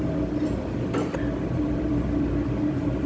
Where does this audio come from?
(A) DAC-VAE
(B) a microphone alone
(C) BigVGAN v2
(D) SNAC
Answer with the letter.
C